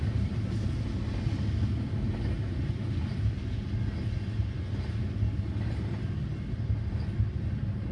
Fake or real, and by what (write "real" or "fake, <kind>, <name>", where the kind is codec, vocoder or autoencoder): real